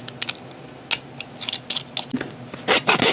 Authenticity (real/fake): real